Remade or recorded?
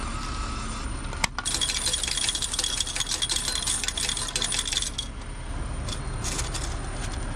recorded